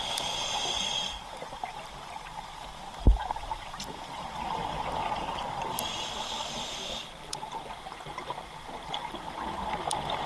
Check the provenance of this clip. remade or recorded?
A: recorded